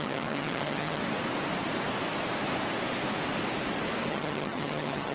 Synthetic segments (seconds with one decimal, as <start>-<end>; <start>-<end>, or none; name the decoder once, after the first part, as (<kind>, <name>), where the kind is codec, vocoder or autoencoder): 0.0-1.0 (vocoder, HiFi-GAN); 4.1-5.1